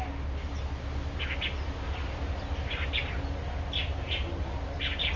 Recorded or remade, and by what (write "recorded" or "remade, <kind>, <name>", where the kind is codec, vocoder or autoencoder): recorded